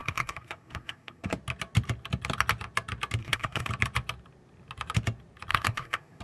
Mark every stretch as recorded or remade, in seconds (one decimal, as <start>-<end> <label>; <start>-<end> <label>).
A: 0.0-1.3 remade; 1.3-3.2 recorded; 3.2-3.7 remade; 3.7-5.5 recorded; 5.5-6.2 remade